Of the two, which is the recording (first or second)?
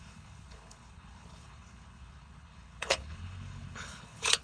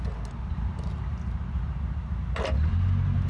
second